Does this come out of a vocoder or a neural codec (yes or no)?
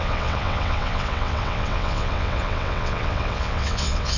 yes